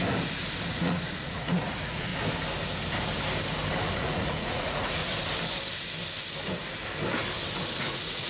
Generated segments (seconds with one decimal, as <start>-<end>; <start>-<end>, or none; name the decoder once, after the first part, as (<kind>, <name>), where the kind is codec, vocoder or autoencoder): 0.7-2.1 (vocoder, Vocos); 4.0-5.0; 7.8-8.3